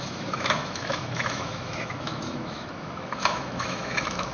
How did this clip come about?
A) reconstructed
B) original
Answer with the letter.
A